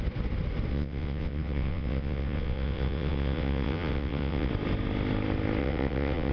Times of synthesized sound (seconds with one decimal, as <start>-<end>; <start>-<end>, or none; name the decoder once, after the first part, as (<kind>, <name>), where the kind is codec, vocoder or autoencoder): 0.7-4.5 (vocoder, WaveNeXt); 5.6-6.3